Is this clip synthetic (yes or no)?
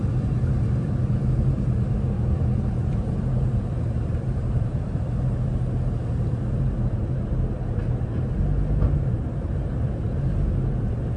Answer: yes